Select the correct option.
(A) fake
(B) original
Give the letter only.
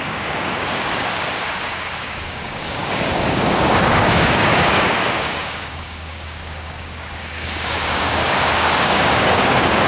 A